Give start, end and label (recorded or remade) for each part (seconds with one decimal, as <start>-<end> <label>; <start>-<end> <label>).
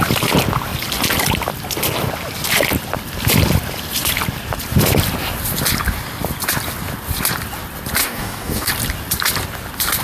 0.0-8.0 recorded; 8.0-8.7 remade; 8.7-10.0 recorded